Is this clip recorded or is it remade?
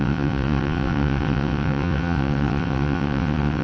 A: remade